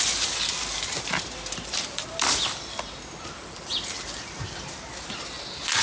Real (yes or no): yes